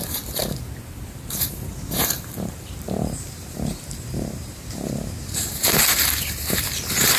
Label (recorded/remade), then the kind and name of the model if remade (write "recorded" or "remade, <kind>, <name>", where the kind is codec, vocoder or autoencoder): remade, vocoder, BigVGAN v2